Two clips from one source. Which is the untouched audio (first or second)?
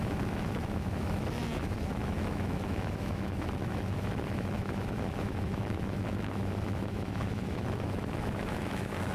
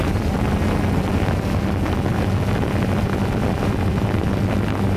second